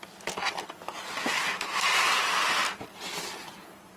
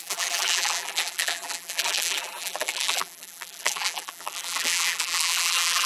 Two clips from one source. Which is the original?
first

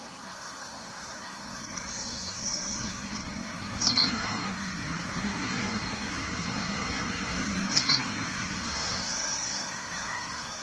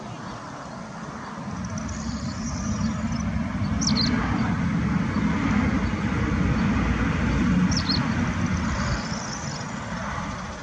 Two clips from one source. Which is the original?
second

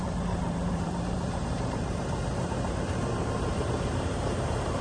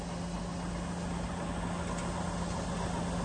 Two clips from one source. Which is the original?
second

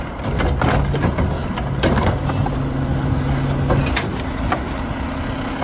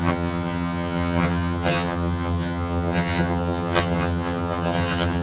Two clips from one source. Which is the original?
first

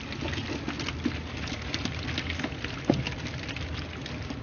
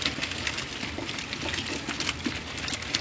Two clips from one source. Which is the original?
first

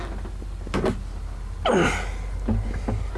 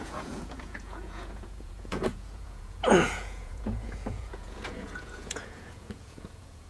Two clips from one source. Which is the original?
first